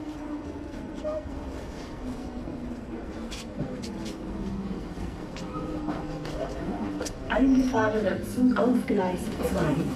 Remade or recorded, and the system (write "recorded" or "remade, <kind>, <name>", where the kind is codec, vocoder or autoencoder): remade, codec, SNAC